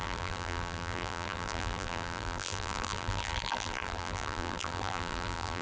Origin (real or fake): fake